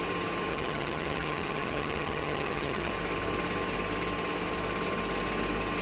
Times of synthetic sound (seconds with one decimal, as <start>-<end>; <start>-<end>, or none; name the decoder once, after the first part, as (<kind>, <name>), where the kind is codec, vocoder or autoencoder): 0.5-2.9 (vocoder, HiFi-GAN)